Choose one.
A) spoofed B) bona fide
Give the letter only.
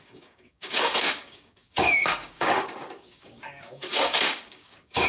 A